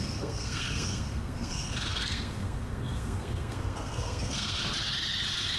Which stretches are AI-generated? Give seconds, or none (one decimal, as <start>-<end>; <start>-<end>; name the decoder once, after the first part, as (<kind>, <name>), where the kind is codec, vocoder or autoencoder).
0.0-4.6 (codec, SNAC)